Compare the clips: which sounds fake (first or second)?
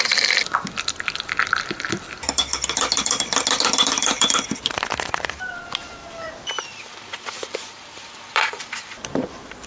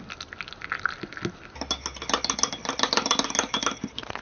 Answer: first